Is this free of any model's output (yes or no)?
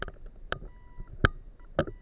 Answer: yes